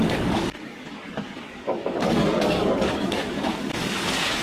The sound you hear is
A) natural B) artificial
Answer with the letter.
B